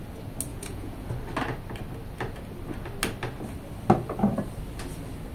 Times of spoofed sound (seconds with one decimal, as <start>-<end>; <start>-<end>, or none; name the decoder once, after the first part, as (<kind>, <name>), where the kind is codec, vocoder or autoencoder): 0.5-1.1 (vocoder, Vocos)